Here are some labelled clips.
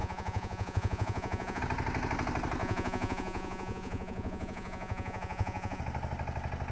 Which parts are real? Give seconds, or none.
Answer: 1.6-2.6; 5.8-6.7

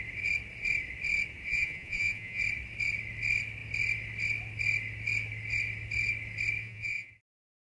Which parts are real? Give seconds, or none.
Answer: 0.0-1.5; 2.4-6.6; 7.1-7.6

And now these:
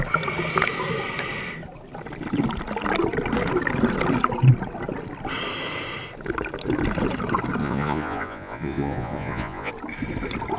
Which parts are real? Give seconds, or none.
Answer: 0.0-7.6; 9.7-10.6